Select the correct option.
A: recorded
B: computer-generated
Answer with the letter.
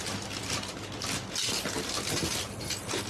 A